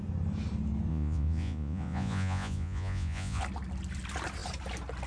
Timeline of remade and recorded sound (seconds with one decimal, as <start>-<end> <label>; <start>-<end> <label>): 0.0-0.9 recorded; 0.9-3.4 remade; 3.4-5.1 recorded